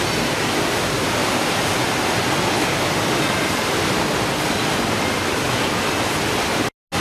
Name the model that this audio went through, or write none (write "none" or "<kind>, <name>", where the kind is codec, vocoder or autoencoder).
none